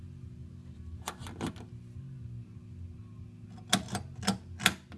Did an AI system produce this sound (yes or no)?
no